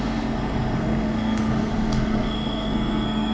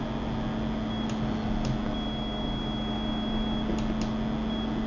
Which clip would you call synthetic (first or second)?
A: first